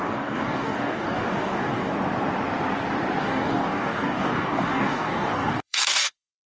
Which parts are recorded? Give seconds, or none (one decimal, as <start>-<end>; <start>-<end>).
1.9-3.2